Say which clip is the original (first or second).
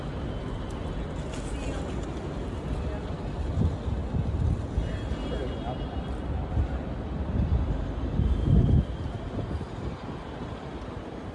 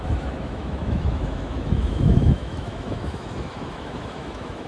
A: first